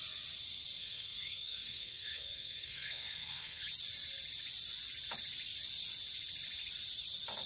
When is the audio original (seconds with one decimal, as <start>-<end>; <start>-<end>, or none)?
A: 0.0-0.8; 3.6-7.5

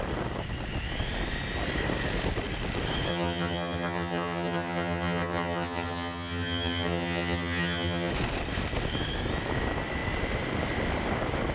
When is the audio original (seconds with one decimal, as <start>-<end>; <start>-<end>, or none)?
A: 0.0-3.1; 8.1-11.5